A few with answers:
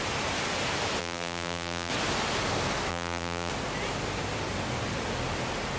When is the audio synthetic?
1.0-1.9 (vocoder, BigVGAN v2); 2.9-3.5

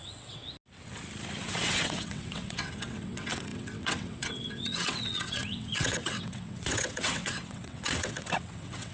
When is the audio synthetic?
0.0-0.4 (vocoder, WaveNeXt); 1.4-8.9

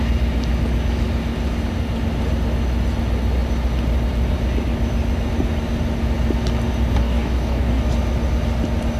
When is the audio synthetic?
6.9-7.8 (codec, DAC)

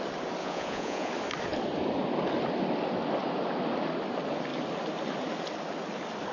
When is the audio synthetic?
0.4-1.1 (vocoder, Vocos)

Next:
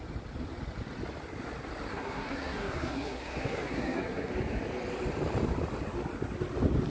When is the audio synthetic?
1.9-4.3 (codec, SNAC)

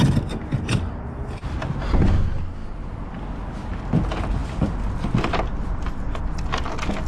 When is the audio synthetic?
none

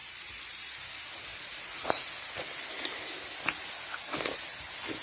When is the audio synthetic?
0.0-0.8 (vocoder, Vocos)

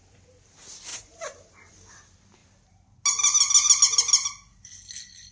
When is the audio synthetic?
0.9-1.7 (vocoder, BigVGAN v2)